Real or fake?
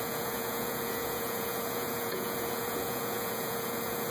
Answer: fake